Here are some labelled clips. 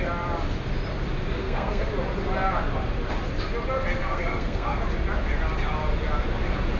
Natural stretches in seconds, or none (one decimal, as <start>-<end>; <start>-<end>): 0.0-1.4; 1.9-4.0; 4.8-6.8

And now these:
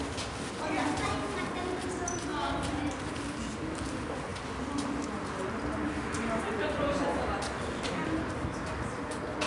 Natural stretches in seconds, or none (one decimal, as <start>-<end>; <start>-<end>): 0.0-9.5

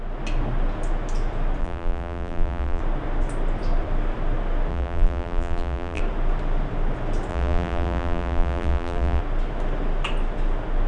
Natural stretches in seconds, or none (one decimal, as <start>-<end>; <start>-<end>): 0.0-1.6; 2.8-4.7; 6.0-7.3; 9.2-10.9

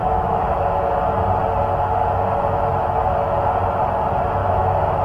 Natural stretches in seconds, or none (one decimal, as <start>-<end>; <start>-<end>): 0.9-4.4

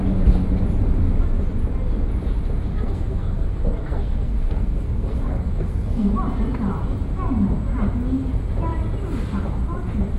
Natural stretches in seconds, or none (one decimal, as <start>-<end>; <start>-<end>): 0.0-2.7; 6.1-10.2

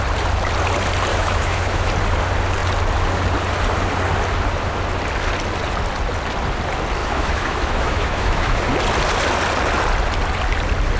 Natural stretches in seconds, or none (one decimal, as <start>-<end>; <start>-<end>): 0.0-1.1; 1.9-7.0; 8.6-11.0

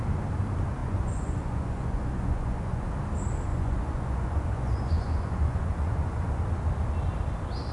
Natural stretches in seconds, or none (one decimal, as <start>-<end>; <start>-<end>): 0.0-0.8; 2.9-3.5; 6.4-7.7